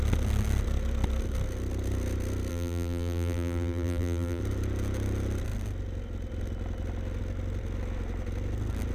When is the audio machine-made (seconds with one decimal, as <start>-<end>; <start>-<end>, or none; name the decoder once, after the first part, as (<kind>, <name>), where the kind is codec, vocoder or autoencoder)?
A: 2.5-4.4 (vocoder, BigVGAN v2)